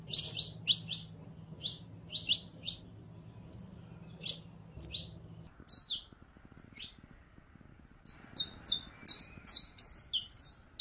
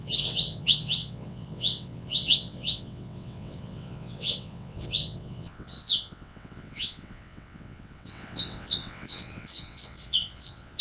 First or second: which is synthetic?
second